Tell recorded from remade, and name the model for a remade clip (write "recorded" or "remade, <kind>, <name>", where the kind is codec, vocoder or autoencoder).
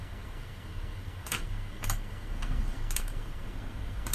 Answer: remade, codec, SNAC